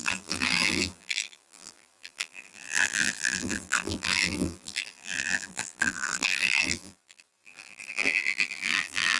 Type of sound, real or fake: fake